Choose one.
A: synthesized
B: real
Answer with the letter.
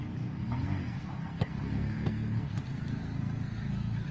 A